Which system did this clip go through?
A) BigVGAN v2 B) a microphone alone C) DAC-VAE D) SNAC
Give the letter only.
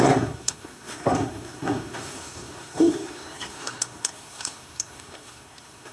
D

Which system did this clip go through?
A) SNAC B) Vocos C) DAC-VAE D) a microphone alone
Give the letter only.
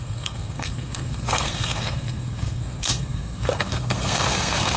A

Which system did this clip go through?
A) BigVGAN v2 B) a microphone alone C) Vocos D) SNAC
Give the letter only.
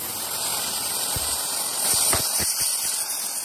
B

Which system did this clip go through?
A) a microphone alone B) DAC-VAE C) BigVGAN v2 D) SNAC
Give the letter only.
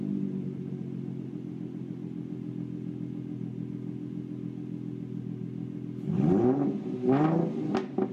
A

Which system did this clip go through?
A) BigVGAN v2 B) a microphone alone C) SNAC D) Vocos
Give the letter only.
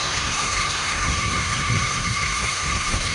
C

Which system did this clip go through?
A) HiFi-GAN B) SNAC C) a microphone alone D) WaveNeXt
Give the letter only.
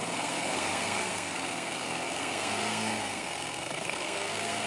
B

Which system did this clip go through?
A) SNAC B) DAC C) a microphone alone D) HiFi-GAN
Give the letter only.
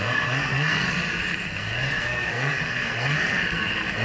A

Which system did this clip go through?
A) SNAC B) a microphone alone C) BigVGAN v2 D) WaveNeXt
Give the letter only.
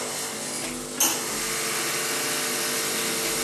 B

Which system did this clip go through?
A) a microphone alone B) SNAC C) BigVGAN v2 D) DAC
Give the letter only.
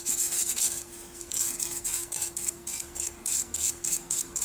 B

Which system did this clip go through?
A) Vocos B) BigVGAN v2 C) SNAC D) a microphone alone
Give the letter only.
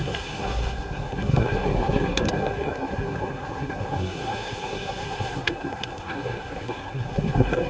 C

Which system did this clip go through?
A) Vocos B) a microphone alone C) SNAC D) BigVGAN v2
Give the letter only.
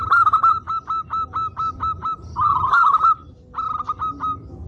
B